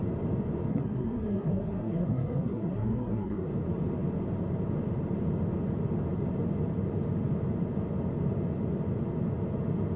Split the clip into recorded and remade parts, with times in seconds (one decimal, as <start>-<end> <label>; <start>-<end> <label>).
0.0-0.7 recorded; 0.7-3.5 remade; 3.5-10.0 recorded